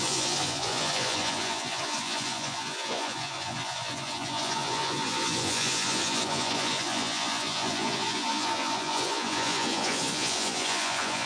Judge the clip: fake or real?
fake